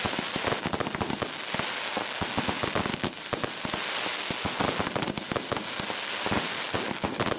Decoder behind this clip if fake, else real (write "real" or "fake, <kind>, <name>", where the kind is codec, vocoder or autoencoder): real